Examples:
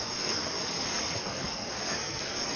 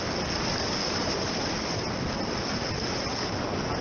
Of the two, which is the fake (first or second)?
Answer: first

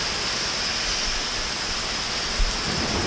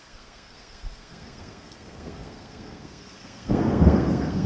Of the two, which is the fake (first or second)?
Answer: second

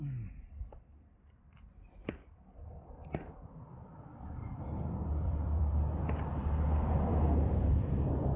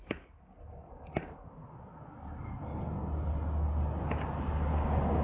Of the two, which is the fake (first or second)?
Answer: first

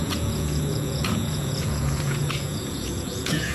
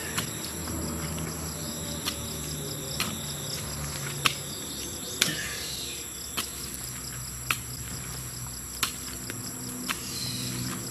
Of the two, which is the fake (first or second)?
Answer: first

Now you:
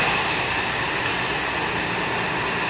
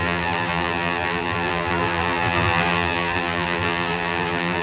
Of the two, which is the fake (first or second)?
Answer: second